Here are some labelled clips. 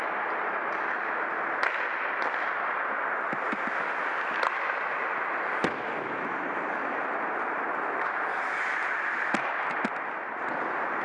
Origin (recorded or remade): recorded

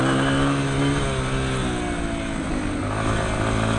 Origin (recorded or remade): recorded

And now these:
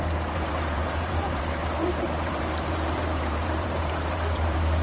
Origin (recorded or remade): remade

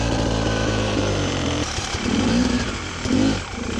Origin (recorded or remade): remade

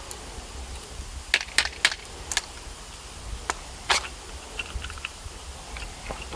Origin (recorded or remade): recorded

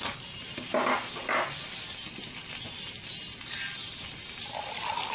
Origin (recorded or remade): recorded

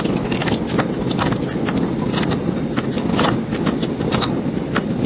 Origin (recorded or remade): recorded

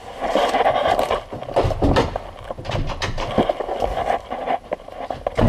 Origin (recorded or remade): recorded